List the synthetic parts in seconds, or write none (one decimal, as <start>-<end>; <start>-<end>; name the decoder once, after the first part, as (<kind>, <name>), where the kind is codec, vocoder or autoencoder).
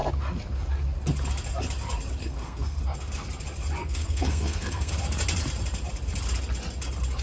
2.2-2.8 (codec, SNAC); 3.8-4.9